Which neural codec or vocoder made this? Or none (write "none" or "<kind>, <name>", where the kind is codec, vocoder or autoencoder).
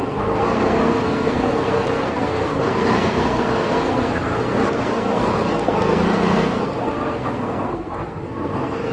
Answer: codec, SNAC